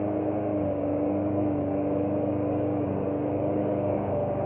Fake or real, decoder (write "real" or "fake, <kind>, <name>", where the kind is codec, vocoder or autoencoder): fake, codec, DAC